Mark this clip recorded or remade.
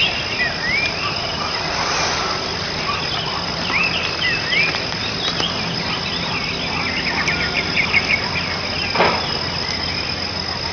recorded